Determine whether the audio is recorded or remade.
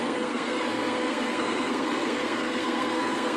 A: remade